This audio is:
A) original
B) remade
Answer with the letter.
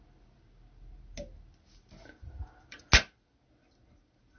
A